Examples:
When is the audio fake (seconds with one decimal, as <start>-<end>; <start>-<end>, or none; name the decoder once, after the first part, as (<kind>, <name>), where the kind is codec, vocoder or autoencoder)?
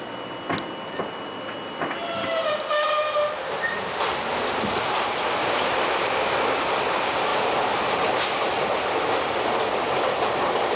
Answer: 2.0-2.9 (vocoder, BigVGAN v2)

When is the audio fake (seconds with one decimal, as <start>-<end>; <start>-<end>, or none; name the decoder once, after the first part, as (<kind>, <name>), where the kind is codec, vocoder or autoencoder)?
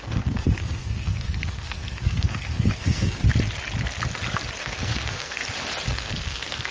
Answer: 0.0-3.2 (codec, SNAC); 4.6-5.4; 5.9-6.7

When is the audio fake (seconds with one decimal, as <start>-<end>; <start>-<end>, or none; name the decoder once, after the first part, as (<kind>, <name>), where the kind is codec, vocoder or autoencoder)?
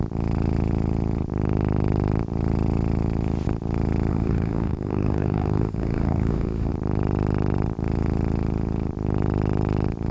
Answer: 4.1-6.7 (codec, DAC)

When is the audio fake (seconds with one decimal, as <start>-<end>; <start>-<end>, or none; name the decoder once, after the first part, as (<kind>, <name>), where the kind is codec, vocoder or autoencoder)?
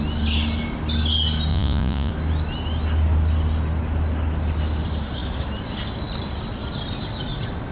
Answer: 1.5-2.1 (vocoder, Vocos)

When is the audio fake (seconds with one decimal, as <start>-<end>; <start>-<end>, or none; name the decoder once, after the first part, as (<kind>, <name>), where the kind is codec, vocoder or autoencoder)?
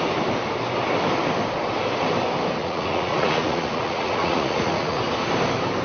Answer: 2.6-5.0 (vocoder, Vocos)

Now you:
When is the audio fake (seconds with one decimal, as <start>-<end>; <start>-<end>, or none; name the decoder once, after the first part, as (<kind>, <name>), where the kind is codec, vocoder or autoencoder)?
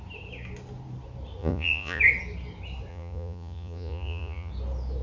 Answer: 1.4-2.0 (vocoder, Vocos); 2.9-4.5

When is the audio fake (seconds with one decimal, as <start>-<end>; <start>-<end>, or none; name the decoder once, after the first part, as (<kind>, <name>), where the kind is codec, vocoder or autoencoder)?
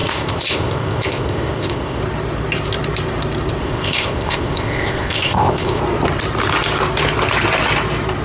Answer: 0.0-2.0 (codec, ZipCodec); 3.6-5.8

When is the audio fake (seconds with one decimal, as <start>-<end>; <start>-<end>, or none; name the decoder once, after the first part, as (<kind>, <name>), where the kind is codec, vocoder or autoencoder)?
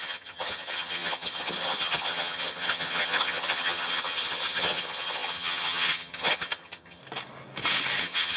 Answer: 0.0-7.0 (vocoder, HiFi-GAN); 8.0-8.4